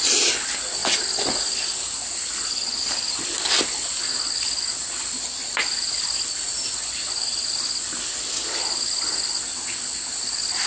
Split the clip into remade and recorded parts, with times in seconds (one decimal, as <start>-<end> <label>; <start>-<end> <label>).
0.0-0.8 recorded; 0.8-2.8 remade; 2.8-10.7 recorded